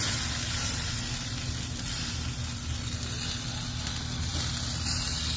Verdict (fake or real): real